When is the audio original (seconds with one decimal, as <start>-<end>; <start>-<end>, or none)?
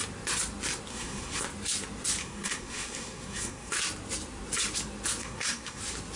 0.0-0.9; 1.4-2.2; 3.7-5.2; 5.8-6.2